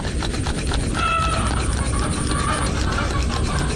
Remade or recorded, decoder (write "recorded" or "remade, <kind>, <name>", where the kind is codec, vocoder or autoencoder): recorded